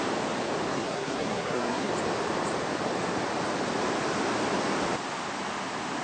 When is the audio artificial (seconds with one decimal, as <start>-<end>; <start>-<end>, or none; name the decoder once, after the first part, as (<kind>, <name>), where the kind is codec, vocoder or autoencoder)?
0.7-1.9 (codec, SNAC)